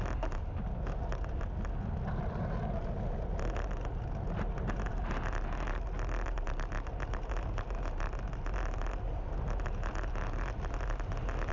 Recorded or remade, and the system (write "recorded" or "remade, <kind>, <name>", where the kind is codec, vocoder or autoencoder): recorded